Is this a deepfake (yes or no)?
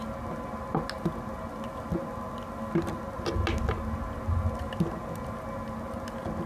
no